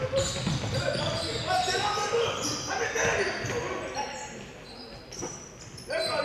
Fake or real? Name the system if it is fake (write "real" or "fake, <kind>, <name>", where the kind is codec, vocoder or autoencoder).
real